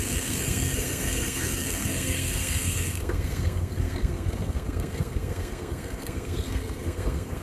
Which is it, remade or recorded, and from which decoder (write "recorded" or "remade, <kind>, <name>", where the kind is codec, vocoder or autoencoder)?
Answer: remade, codec, SNAC